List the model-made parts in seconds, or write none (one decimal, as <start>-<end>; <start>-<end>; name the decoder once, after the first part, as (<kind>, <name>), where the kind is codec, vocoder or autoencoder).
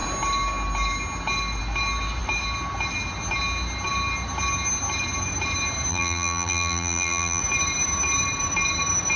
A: 5.9-7.4 (vocoder, BigVGAN v2)